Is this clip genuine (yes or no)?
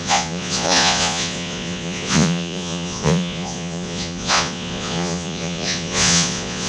no